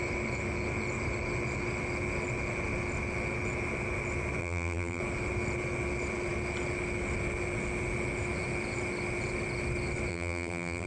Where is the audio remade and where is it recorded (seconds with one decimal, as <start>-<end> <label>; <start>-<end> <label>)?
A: 0.0-4.4 recorded; 4.4-5.0 remade; 5.0-10.1 recorded; 10.1-10.9 remade